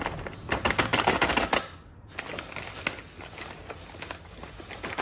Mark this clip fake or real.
real